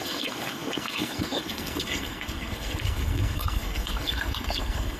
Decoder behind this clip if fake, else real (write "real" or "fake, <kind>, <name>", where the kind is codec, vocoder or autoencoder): fake, codec, SNAC